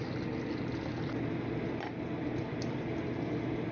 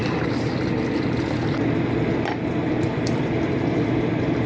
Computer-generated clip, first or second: second